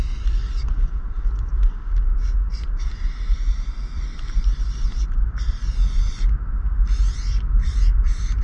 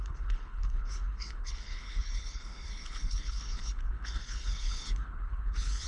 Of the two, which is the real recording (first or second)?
first